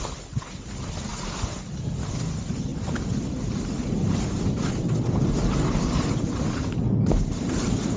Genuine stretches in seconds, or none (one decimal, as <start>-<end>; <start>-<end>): 0.0-8.0